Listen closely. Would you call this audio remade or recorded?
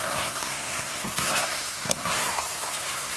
remade